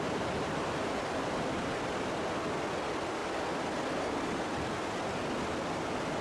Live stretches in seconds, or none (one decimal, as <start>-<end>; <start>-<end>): 0.0-6.2